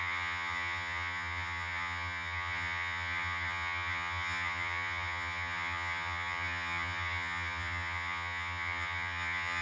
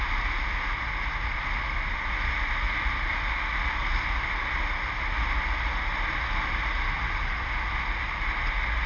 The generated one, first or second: first